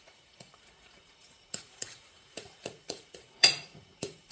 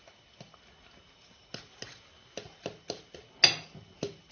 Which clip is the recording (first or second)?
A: second